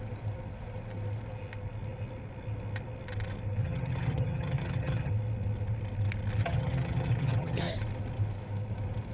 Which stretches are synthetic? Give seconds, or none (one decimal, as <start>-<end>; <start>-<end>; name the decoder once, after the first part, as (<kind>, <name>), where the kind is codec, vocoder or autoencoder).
3.6-5.1 (vocoder, HiFi-GAN); 6.4-7.7

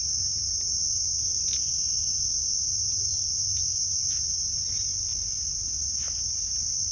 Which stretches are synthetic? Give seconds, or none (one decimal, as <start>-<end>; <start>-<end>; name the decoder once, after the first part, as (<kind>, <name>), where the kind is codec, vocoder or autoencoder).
none

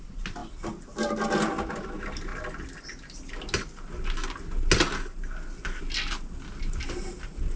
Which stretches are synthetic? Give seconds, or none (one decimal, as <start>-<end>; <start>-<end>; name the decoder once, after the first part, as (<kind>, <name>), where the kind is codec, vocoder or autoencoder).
none

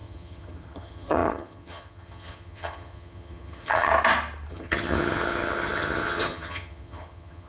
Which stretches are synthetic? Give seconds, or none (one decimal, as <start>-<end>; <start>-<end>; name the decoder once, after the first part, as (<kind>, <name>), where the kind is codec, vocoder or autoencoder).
0.0-3.9 (vocoder, HiFi-GAN); 4.5-7.5

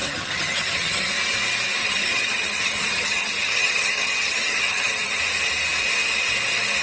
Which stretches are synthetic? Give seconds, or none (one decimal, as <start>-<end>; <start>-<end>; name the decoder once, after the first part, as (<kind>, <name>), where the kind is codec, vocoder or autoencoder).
0.0-1.1 (vocoder, HiFi-GAN); 1.8-5.2

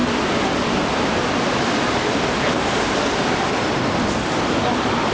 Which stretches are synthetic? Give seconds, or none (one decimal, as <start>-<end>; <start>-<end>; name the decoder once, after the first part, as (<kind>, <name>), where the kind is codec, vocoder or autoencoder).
none

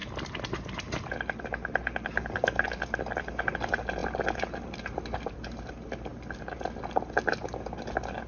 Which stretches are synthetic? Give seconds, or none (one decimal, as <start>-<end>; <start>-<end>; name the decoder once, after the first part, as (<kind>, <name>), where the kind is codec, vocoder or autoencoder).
none

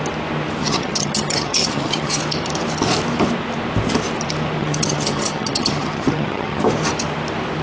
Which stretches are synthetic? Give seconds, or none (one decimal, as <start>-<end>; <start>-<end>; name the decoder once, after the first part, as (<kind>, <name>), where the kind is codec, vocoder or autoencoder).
0.6-2.2 (vocoder, HiFi-GAN); 4.6-6.6